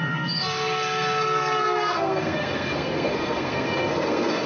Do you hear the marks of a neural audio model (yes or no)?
yes